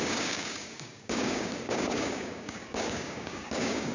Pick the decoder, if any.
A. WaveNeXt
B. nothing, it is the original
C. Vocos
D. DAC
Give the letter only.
D